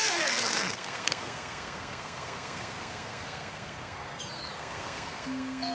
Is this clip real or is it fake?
fake